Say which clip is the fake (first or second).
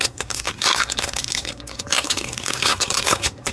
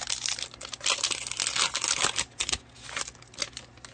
first